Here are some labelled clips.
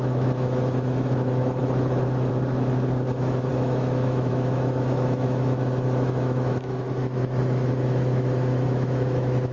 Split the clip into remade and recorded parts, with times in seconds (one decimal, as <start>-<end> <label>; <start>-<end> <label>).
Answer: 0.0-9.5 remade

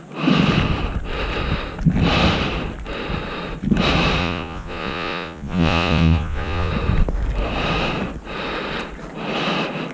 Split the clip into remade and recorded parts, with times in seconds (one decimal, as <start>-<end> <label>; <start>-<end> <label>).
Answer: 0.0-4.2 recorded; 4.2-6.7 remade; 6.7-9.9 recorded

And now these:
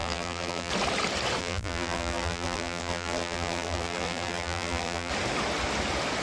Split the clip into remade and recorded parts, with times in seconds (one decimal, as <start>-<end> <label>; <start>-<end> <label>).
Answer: 0.0-0.7 remade; 0.7-1.4 recorded; 1.4-5.1 remade; 5.1-6.2 recorded